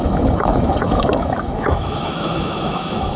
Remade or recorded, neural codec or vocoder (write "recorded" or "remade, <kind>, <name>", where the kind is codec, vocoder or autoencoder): remade, autoencoder, DAC-VAE